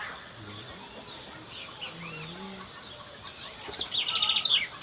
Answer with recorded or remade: recorded